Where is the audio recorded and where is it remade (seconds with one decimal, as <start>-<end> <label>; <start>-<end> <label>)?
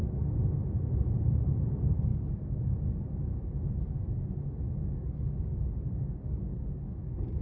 0.0-2.1 recorded; 2.1-3.5 remade; 3.5-4.8 recorded; 4.8-7.4 remade